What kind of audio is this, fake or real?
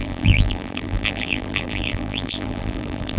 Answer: fake